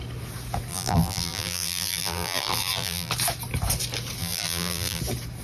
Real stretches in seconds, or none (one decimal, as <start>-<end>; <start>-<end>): 0.0-0.7; 3.1-4.2; 5.0-5.4